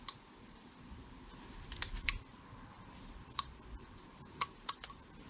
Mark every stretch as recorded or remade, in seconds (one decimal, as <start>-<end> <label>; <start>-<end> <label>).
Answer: 0.0-3.2 recorded; 3.2-4.1 remade; 4.1-5.3 recorded